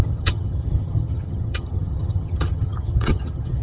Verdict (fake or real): fake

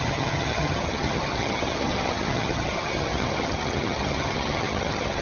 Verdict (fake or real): fake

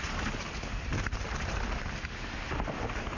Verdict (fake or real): real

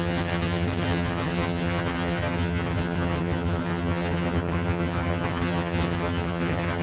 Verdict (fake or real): fake